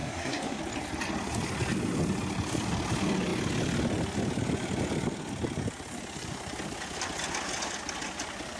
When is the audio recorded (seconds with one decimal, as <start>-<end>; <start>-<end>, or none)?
0.6-8.6